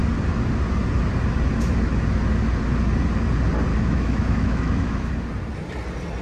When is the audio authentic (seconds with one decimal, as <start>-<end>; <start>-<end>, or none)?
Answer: 0.0-3.7; 5.1-6.2